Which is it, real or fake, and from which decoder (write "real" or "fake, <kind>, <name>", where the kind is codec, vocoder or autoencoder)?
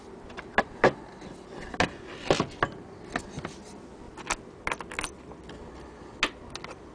real